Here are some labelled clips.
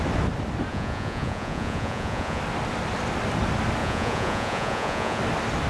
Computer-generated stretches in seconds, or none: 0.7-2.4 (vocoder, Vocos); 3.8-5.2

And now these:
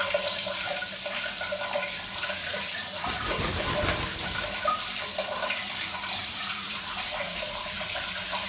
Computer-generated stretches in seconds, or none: 2.4-3.6 (vocoder, Vocos); 6.2-8.5

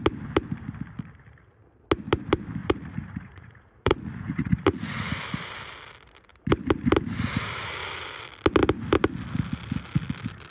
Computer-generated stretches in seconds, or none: 2.6-5.1 (vocoder, Vocos)

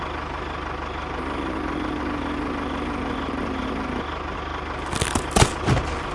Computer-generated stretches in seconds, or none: none